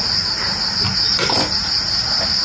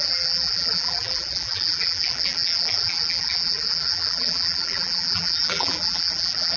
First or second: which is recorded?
first